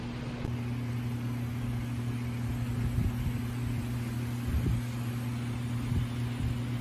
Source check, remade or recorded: recorded